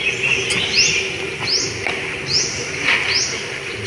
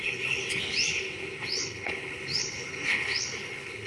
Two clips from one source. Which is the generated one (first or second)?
second